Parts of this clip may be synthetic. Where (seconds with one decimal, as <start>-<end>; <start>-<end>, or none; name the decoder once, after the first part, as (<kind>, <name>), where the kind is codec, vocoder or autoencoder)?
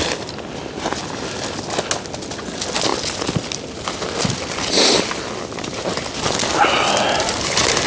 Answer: none